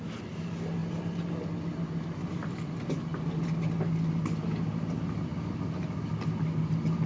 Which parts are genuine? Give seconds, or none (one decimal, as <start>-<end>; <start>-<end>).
0.0-7.1

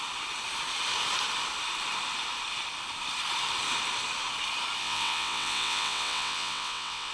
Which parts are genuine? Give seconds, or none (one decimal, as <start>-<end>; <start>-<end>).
0.0-4.8

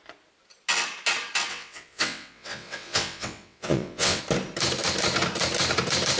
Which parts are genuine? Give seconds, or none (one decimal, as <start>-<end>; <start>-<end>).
0.0-1.5; 4.2-6.2

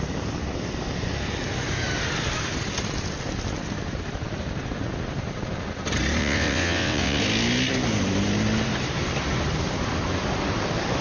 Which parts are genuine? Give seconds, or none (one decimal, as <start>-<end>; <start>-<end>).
0.0-6.2; 7.2-11.0

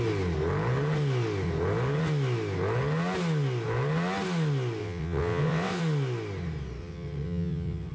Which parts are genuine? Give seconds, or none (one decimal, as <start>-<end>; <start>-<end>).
0.0-4.8; 5.8-6.8

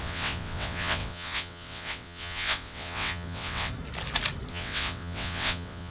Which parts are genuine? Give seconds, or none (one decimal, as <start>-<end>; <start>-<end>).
3.7-4.5

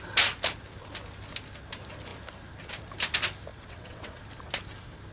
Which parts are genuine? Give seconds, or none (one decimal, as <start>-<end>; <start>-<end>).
0.0-3.5; 4.2-5.1